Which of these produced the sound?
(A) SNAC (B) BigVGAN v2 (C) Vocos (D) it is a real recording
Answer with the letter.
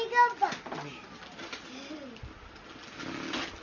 D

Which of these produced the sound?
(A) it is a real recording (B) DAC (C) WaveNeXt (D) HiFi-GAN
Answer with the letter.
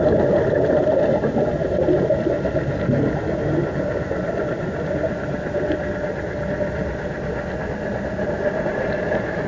A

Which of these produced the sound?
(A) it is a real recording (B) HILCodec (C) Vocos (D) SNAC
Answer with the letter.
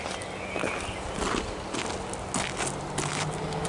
A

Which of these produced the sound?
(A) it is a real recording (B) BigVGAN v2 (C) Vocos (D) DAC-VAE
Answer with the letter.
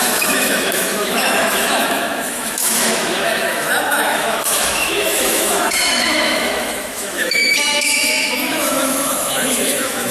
D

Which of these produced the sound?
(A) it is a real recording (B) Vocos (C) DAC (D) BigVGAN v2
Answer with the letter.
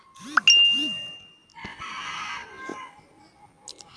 A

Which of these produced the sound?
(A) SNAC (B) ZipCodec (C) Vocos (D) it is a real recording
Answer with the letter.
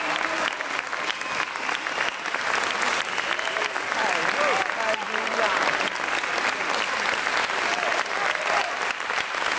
D